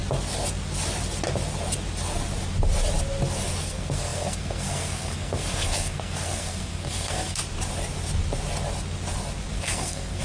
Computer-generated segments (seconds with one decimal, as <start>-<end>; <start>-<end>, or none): 3.6-7.4; 9.5-10.2